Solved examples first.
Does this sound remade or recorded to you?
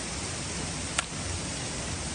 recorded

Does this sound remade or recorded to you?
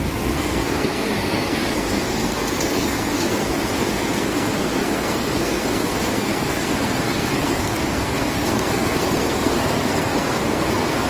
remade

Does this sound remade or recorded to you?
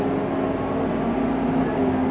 recorded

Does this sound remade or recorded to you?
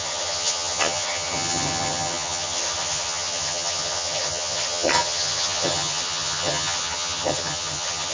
remade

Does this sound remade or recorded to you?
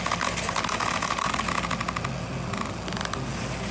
recorded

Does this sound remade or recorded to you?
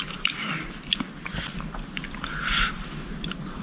recorded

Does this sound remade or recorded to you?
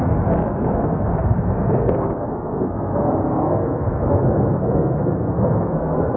remade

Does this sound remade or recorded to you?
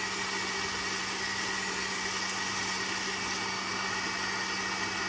recorded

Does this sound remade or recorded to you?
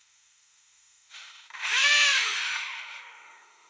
remade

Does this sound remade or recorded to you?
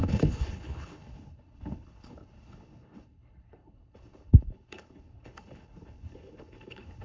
remade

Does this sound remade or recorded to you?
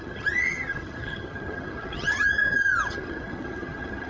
remade